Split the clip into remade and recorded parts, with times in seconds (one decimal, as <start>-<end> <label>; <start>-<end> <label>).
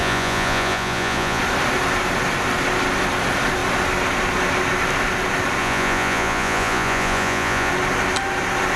0.0-1.4 remade; 1.4-5.6 recorded; 5.6-7.7 remade; 7.7-8.8 recorded